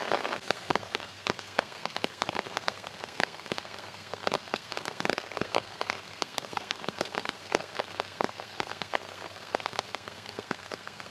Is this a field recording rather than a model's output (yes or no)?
no